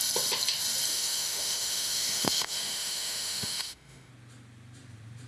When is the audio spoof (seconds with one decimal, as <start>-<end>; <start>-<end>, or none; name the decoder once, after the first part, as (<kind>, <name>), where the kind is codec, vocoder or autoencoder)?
0.9-4.1 (autoencoder, DAC-VAE)